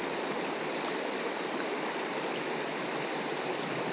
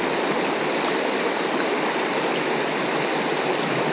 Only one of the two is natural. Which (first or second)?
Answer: second